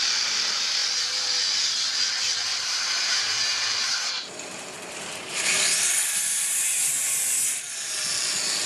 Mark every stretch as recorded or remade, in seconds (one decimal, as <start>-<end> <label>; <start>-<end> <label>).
0.0-2.5 recorded; 2.5-6.9 remade; 6.9-8.7 recorded